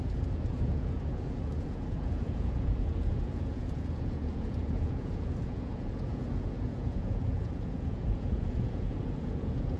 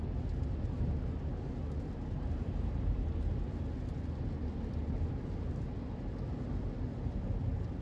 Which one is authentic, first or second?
second